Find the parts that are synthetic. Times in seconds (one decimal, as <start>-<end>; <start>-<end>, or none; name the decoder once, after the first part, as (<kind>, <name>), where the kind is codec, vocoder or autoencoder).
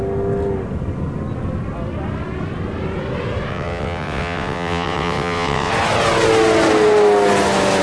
3.5-5.7 (vocoder, WaveNeXt)